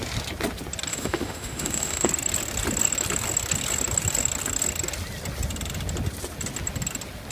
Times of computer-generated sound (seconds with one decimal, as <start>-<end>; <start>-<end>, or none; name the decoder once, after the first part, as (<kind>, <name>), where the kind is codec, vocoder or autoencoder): 0.9-2.1 (autoencoder, DAC-VAE)